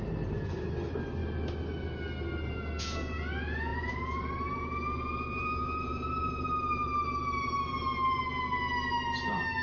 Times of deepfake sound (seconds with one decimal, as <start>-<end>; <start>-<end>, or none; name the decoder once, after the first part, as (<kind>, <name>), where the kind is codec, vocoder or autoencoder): 3.7-8.2 (vocoder, BigVGAN v2)